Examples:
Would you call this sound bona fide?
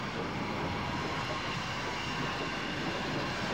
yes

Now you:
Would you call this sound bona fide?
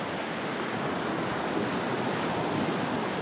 yes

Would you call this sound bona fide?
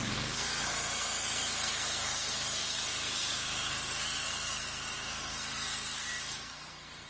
no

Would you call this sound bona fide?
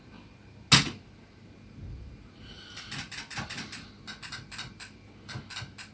yes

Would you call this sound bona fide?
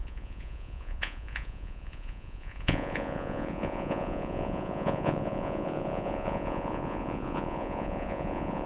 no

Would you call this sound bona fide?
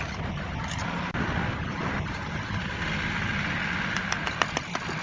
yes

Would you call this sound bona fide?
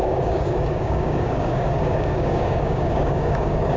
no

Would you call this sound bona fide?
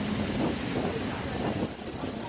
yes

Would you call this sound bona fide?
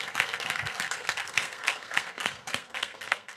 no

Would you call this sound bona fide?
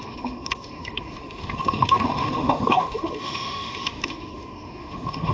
no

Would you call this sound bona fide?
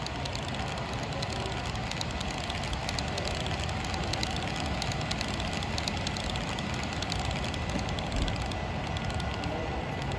yes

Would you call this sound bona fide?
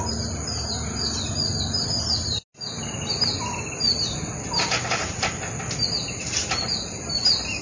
yes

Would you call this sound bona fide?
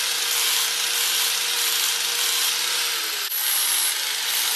yes